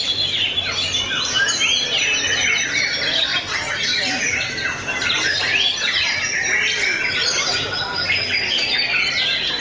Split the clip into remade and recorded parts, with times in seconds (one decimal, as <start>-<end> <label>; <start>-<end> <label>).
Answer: 0.0-9.6 recorded